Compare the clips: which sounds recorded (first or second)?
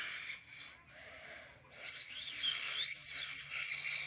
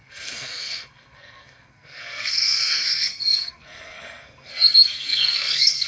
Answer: first